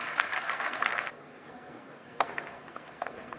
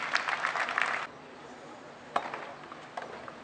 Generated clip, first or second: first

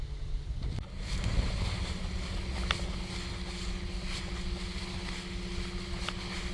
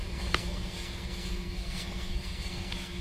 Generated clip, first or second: second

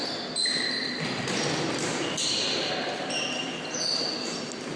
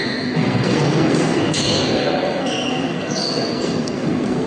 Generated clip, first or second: second